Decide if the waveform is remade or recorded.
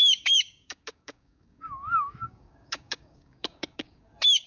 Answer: remade